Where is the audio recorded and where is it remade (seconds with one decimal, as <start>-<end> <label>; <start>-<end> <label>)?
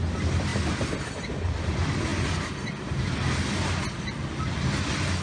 0.0-5.2 recorded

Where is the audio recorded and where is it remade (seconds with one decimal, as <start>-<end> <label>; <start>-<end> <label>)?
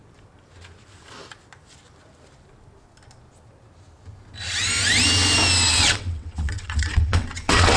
0.0-5.7 recorded; 5.7-7.8 remade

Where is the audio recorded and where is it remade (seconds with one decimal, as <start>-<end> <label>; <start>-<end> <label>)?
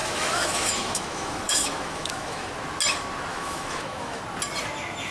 0.0-2.5 remade; 2.5-3.3 recorded; 3.3-4.2 remade; 4.2-5.1 recorded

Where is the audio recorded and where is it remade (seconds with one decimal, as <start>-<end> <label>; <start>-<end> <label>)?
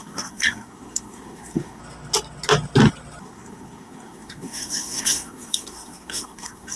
0.0-1.8 remade; 1.8-3.2 recorded; 3.2-6.8 remade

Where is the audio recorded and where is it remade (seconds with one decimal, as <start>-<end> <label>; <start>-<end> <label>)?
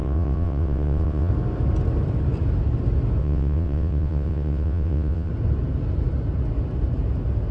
0.0-1.3 remade; 1.3-3.2 recorded; 3.2-5.3 remade; 5.3-7.5 recorded